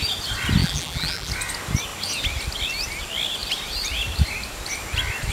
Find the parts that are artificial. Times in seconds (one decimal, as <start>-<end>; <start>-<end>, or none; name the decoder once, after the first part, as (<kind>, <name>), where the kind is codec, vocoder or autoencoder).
0.6-1.3 (vocoder, BigVGAN v2)